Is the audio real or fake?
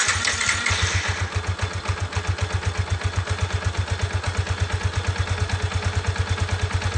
real